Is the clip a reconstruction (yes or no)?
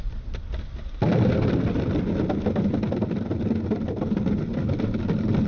no